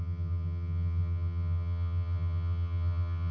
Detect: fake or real fake